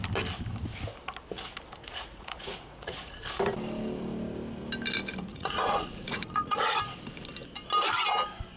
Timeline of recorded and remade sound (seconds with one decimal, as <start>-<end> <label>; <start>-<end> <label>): 0.0-1.8 recorded; 1.8-3.2 remade; 3.2-5.3 recorded; 5.3-6.8 remade; 6.8-8.6 recorded